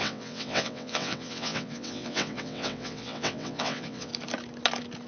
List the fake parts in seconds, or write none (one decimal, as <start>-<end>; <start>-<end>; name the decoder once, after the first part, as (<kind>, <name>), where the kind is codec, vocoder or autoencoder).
0.0-4.1 (vocoder, WaveNeXt)